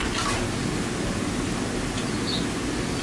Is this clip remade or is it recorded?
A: recorded